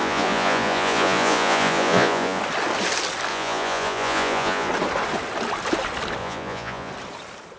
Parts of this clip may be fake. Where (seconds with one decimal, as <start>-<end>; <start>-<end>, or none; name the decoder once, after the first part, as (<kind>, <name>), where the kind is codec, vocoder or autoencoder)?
0.0-2.4 (vocoder, Vocos); 3.3-4.7; 6.2-6.9